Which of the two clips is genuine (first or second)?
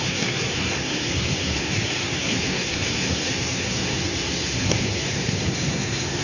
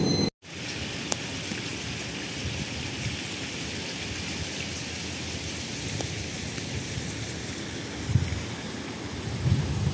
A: second